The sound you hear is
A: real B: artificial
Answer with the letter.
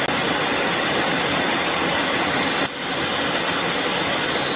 A